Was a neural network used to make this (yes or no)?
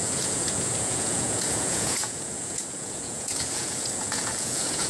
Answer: yes